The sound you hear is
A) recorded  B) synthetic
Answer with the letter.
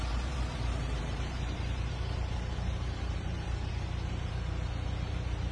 B